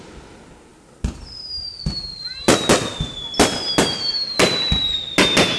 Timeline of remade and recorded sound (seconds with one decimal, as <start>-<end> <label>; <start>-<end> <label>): 0.0-5.6 recorded